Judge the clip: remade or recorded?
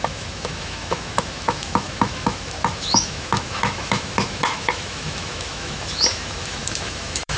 remade